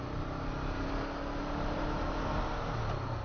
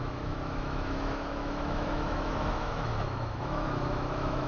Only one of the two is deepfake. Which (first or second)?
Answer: second